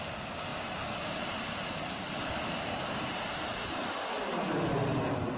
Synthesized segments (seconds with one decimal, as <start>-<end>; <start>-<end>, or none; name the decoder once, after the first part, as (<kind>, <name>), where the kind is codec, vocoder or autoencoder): 0.5-3.7 (vocoder, BigVGAN v2)